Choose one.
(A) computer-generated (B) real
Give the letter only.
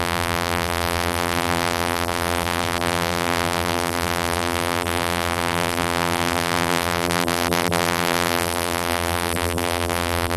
A